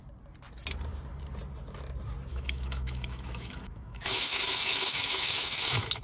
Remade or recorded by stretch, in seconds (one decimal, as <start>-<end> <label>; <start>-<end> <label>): 0.0-2.3 recorded; 2.3-6.0 remade